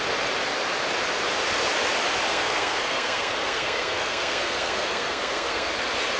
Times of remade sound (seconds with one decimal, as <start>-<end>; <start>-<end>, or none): 2.3-5.7